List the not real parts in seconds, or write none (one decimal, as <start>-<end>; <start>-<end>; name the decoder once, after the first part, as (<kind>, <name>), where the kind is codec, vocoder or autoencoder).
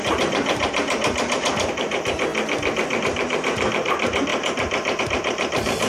0.0-2.3 (vocoder, BigVGAN v2); 3.0-4.3; 5.0-5.9